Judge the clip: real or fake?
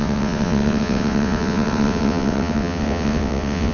fake